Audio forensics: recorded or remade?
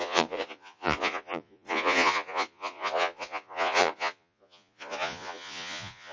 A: remade